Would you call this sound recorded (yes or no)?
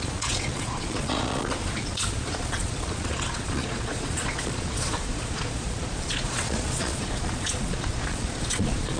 no